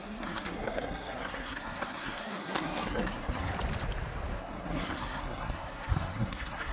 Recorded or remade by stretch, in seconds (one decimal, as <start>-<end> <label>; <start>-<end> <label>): 0.0-3.5 remade; 3.5-4.4 recorded; 4.4-6.7 remade